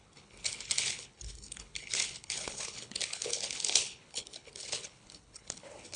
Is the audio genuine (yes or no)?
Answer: no